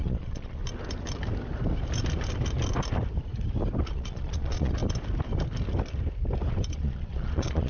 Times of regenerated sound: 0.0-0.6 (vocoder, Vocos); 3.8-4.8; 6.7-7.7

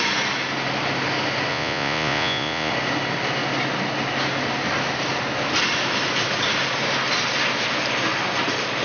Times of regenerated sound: 1.5-2.7 (vocoder, Vocos)

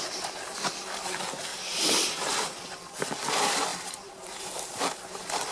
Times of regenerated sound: none

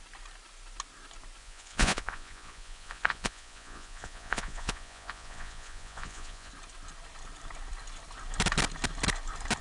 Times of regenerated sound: 1.4-6.5 (vocoder, Vocos)

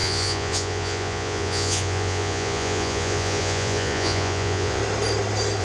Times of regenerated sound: 0.0-4.8 (vocoder, Vocos)

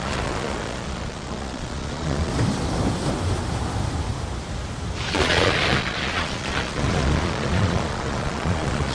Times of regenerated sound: 0.0-2.3 (vocoder, Vocos); 5.1-8.9

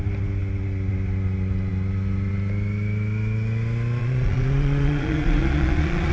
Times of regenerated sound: 4.0-6.1 (vocoder, Vocos)

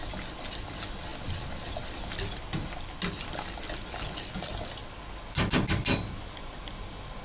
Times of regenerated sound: none